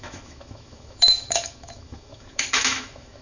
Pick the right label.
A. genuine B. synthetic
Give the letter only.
B